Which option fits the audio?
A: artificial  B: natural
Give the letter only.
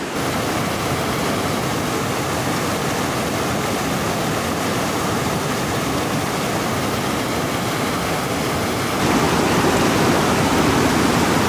B